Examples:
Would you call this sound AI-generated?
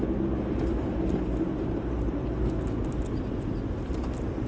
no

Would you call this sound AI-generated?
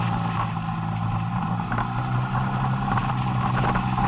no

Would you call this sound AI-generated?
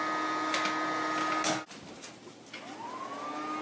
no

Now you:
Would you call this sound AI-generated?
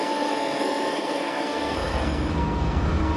yes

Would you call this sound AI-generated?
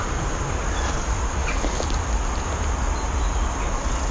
no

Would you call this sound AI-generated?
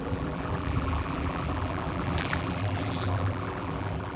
yes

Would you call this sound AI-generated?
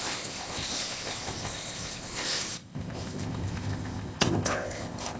yes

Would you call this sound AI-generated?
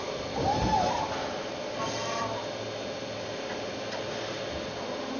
no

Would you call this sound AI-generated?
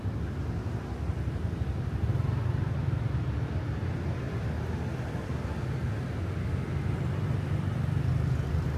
no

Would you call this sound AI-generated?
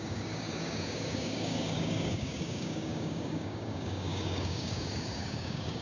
yes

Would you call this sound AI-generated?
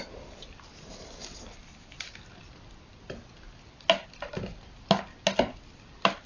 no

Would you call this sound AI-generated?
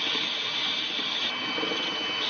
no